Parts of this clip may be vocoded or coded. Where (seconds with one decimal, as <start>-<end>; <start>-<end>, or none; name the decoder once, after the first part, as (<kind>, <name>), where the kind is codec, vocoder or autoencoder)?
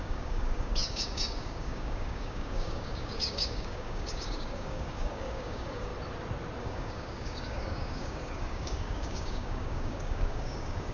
0.0-5.9 (codec, DAC); 6.6-10.9